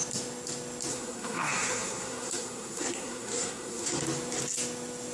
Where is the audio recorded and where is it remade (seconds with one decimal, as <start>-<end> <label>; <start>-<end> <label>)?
0.0-0.9 recorded; 0.9-4.0 remade; 4.0-5.1 recorded